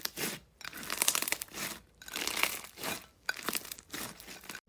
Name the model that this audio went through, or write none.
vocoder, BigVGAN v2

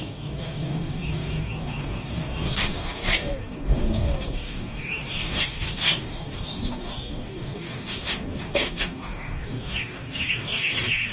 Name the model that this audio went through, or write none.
codec, DAC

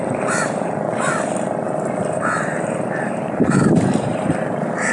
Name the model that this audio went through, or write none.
vocoder, BigVGAN v2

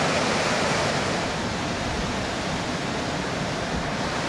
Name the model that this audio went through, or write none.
vocoder, BigVGAN v2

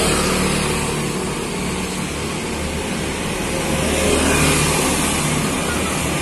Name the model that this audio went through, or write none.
none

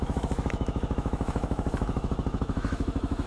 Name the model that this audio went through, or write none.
autoencoder, DAC-VAE